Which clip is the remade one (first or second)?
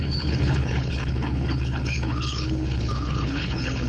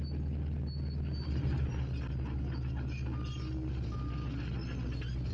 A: first